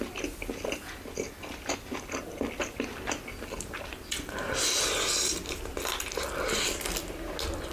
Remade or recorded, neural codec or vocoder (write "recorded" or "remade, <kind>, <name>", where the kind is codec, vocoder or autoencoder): recorded